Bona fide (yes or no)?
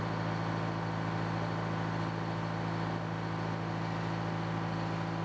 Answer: yes